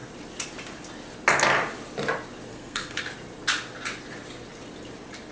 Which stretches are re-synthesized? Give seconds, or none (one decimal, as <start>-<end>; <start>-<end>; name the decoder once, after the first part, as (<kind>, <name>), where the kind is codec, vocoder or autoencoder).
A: 2.5-3.0 (codec, SNAC)